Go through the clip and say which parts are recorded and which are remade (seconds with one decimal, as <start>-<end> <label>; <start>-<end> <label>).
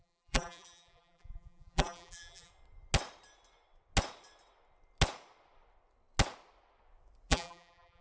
0.0-2.5 remade; 2.5-7.3 recorded; 7.3-8.0 remade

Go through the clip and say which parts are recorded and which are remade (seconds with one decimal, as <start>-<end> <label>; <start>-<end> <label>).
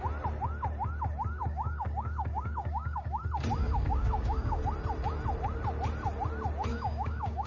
0.0-1.4 recorded; 1.4-3.2 remade; 3.2-3.6 recorded; 3.6-4.6 remade; 4.6-6.7 recorded; 6.7-7.5 remade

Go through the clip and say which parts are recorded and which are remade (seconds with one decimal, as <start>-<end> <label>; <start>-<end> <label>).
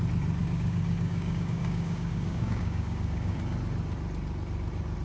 0.0-0.4 recorded; 0.4-3.4 remade; 3.4-5.0 recorded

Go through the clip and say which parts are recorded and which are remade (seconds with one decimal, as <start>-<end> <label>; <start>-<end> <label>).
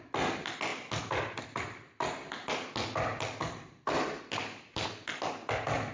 0.0-5.9 recorded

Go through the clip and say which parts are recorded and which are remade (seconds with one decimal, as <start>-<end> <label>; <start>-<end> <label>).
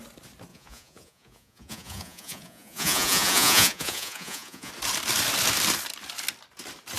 0.0-0.5 recorded; 0.5-4.7 remade; 4.7-7.0 recorded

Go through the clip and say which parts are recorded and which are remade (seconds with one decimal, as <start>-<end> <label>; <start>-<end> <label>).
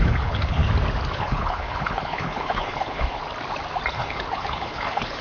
0.0-0.6 remade; 0.6-1.1 recorded; 1.1-3.2 remade; 3.2-3.9 recorded; 3.9-5.2 remade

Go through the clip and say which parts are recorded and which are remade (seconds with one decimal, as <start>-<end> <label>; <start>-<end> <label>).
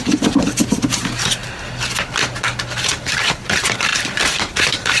0.0-1.4 remade; 1.4-2.8 recorded; 2.8-3.9 remade; 3.9-4.6 recorded; 4.6-5.0 remade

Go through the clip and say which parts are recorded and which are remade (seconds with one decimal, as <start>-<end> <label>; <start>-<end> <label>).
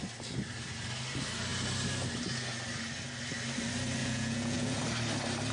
0.0-4.0 recorded; 4.0-4.8 remade; 4.8-5.5 recorded